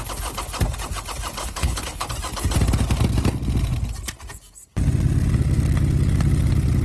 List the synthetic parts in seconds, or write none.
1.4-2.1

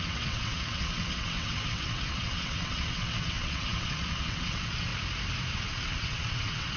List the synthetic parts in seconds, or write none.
0.0-4.9; 5.5-6.8

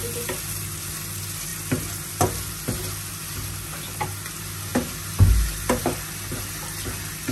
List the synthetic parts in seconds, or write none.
none